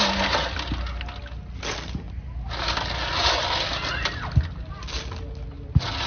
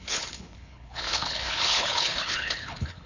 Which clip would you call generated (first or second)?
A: second